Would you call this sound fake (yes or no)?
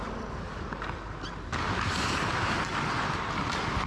no